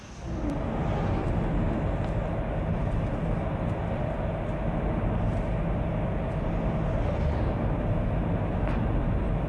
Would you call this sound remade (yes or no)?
no